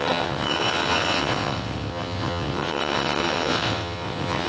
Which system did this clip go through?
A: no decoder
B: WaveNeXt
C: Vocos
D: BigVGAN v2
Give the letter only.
B